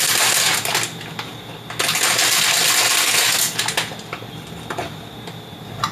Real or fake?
real